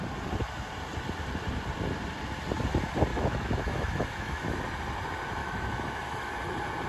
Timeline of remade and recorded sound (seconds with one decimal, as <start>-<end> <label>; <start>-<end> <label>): 0.0-3.1 recorded; 3.1-4.6 remade; 4.6-5.4 recorded; 5.4-6.3 remade; 6.3-6.9 recorded

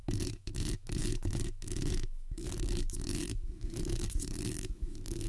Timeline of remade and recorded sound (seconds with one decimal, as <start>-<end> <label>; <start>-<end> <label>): 0.0-5.3 remade